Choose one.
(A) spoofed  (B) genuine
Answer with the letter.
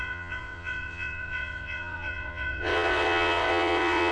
A